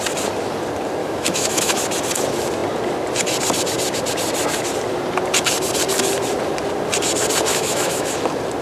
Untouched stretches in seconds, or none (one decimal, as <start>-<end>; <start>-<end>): 0.0-1.0; 1.8-7.5; 8.1-8.6